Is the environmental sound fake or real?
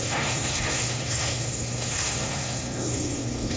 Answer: fake